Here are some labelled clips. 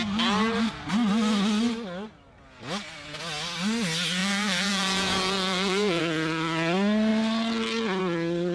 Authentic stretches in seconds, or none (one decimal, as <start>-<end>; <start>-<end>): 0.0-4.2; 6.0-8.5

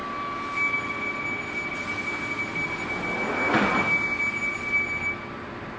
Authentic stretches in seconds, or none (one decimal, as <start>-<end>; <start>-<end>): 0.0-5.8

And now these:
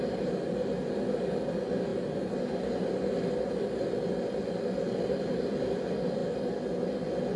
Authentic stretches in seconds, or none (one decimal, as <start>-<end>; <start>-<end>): 0.0-7.4

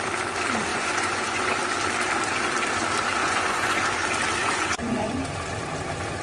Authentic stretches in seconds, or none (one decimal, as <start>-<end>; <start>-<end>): 0.0-0.7; 1.6-3.2; 3.8-4.4; 5.2-6.2

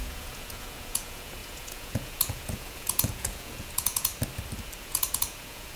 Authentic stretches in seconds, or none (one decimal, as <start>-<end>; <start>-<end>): 4.1-4.8

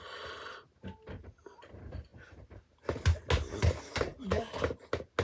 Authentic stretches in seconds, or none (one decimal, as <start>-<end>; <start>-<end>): 0.0-5.2

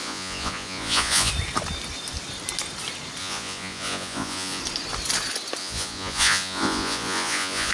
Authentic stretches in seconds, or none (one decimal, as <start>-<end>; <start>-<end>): 1.3-3.2; 4.6-5.6